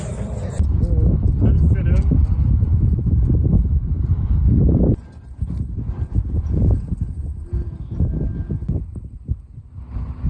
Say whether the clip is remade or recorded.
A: recorded